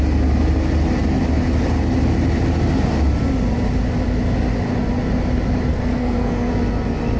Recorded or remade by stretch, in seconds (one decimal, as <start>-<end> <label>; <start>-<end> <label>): 0.0-5.7 recorded; 5.7-6.5 remade; 6.5-7.2 recorded